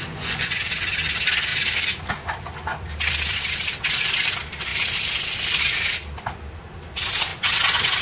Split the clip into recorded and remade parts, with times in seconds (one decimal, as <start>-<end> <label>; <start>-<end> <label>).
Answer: 0.0-0.6 remade; 0.6-8.0 recorded